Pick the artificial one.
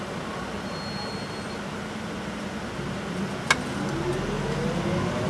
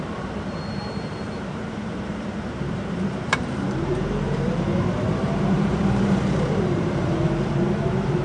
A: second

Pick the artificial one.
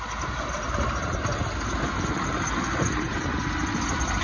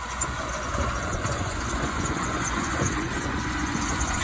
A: second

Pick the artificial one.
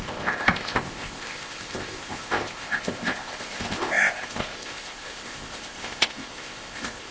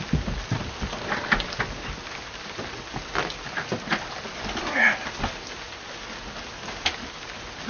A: first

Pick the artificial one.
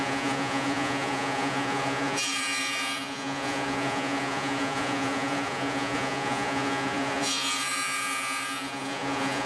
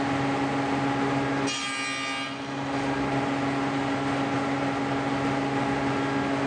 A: first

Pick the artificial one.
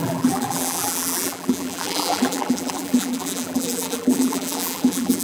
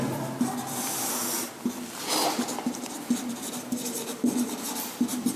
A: first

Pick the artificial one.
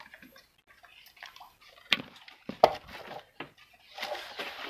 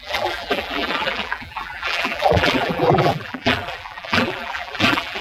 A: second